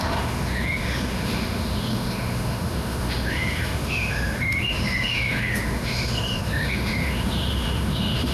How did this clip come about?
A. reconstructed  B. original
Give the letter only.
A